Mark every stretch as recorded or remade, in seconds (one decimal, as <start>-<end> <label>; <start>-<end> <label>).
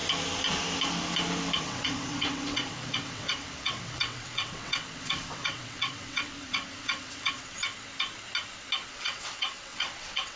0.0-1.6 recorded; 1.6-7.6 remade; 7.6-8.9 recorded; 8.9-10.4 remade